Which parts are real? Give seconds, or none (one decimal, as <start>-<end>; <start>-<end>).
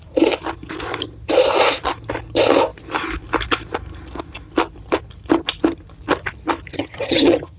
0.0-6.7